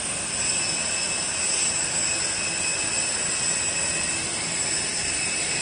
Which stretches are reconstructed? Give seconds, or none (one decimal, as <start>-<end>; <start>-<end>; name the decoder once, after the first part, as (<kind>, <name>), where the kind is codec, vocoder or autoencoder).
none